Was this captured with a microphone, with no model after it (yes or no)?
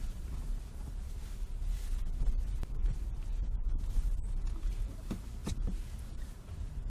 no